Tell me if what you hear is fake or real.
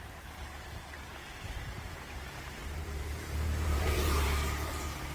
fake